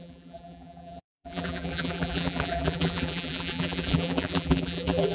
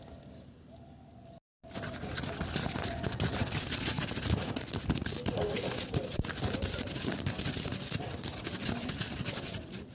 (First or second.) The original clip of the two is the second